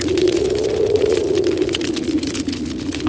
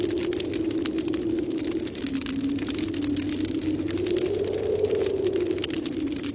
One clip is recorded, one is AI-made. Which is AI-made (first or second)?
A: first